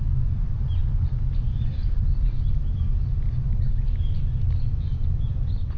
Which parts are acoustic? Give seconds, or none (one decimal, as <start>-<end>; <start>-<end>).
0.0-5.8